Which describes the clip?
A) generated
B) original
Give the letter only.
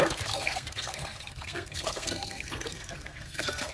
A